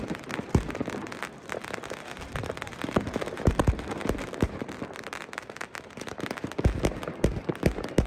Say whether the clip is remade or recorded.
recorded